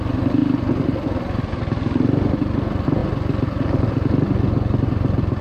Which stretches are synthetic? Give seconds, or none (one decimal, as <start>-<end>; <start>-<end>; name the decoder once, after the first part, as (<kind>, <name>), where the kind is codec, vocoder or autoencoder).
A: none